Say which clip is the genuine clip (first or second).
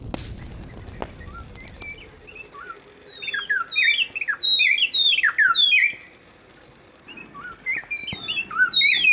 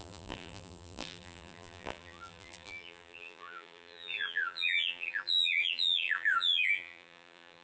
first